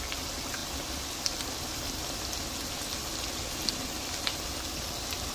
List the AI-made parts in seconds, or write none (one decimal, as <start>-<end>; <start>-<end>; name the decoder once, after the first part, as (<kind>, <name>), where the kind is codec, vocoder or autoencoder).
none